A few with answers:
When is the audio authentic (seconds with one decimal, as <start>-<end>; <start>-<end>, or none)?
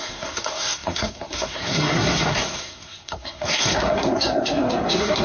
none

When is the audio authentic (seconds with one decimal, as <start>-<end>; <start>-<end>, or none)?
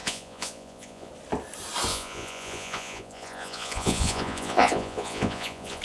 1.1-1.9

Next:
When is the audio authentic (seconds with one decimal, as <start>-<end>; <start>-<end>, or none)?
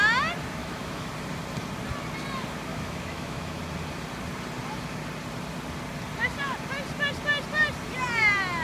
0.0-0.6; 1.1-2.7; 3.6-8.6